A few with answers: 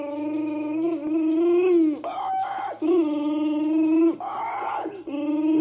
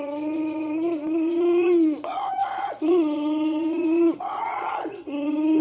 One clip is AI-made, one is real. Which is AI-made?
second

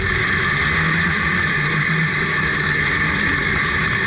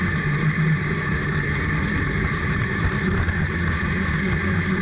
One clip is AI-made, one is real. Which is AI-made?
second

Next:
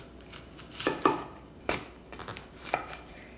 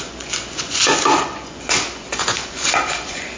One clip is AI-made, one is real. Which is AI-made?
second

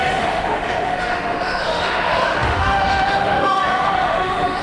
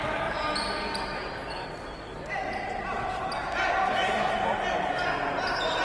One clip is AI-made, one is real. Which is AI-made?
first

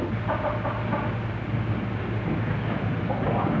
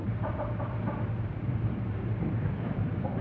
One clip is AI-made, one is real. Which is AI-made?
second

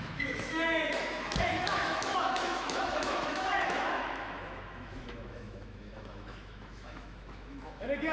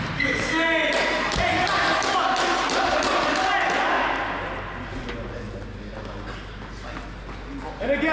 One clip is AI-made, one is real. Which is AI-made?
first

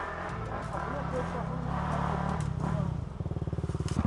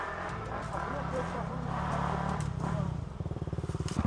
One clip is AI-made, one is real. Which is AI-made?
second